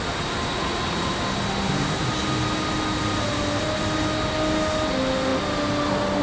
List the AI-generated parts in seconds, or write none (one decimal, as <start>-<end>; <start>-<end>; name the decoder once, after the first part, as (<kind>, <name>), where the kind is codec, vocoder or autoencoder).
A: 0.5-1.1 (vocoder, Vocos)